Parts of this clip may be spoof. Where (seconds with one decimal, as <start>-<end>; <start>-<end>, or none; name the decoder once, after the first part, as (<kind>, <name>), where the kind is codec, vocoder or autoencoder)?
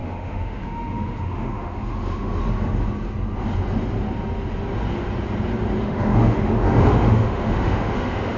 0.0-2.4 (autoencoder, DAC-VAE); 5.8-8.4